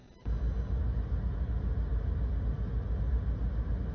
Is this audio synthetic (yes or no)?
no